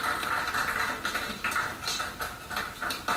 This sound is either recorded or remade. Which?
recorded